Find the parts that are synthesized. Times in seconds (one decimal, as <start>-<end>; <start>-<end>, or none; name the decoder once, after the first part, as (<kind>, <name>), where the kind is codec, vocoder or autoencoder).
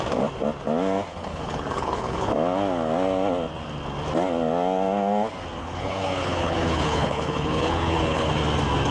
1.1-2.3 (codec, HILCodec); 5.6-8.3